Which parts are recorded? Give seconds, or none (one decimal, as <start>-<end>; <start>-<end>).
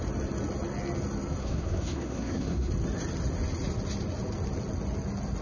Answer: 0.0-1.4; 2.7-5.4